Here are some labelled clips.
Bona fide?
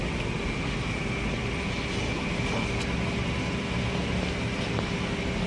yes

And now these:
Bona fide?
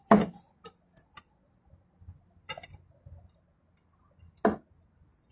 yes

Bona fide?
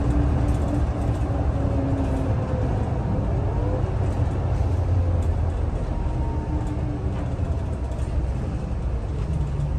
yes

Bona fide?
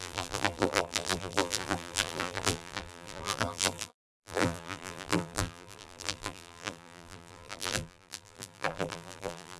no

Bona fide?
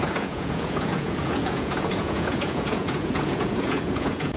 no